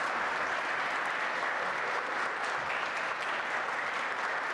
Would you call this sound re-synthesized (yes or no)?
no